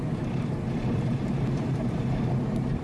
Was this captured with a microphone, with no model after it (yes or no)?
no